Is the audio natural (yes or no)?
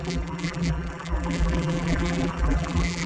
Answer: no